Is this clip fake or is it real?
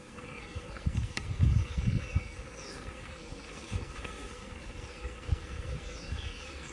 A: fake